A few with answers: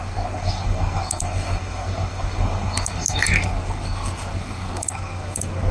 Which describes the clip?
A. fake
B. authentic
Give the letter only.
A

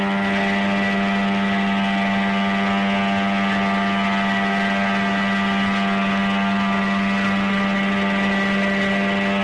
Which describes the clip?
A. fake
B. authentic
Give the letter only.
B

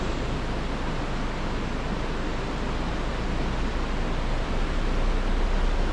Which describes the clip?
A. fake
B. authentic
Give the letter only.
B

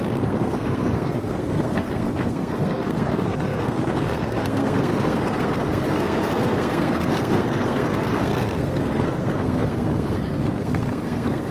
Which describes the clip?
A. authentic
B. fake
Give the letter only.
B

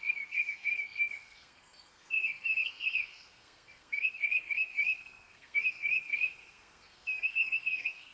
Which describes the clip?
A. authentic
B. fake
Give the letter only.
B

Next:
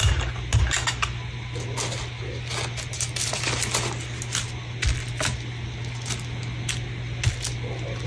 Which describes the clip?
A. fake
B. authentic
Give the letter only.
B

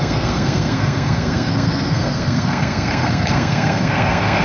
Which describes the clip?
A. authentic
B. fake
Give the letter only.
B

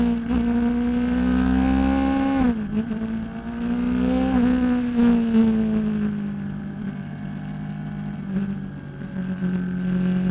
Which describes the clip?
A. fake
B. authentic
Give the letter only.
B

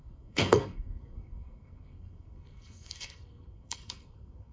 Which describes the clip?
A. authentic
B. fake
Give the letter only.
B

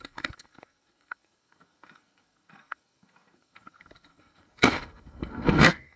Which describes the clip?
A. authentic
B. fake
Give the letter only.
B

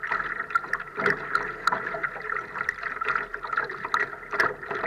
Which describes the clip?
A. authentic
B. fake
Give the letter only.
A